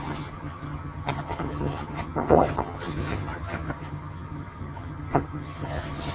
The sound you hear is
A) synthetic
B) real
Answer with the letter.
A